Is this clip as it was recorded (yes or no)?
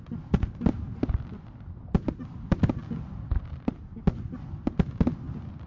yes